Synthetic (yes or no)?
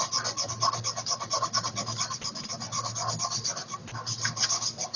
no